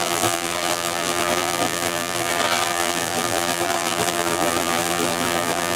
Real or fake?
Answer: fake